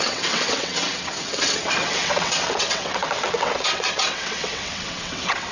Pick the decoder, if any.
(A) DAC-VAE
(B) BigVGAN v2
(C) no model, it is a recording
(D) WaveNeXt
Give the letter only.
D